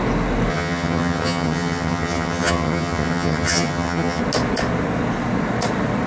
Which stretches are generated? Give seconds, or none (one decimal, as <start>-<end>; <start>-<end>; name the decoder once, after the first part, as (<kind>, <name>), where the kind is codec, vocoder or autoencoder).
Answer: 0.5-4.2 (vocoder, HiFi-GAN)